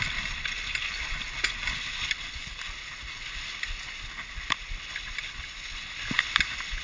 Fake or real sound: real